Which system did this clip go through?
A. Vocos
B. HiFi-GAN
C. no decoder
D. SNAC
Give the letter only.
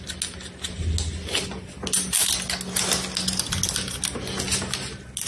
C